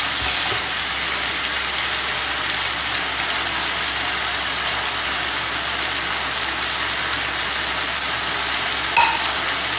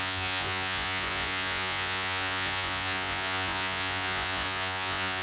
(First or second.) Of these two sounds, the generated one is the second